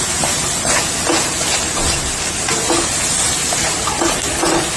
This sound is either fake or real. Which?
real